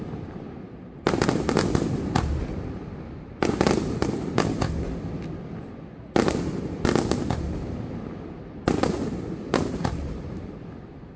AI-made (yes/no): yes